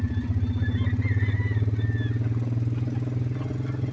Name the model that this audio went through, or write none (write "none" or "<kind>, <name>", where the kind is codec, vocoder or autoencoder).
none